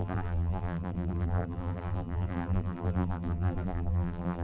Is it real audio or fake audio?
fake